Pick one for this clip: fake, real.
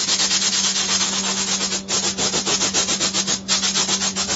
real